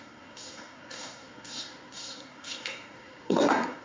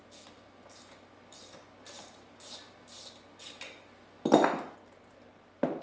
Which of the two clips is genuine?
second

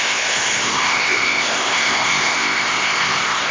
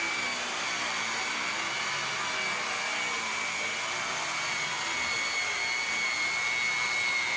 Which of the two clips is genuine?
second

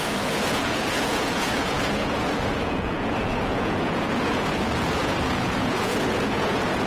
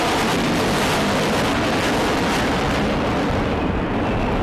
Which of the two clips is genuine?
second